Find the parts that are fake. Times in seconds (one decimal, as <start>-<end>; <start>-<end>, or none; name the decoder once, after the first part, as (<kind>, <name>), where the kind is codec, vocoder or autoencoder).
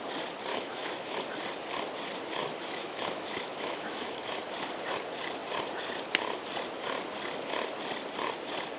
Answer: 0.5-1.2 (autoencoder, DAC-VAE); 2.4-4.4